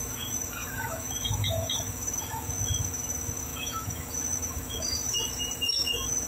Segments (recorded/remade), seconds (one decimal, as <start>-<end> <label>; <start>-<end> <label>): 0.0-6.3 remade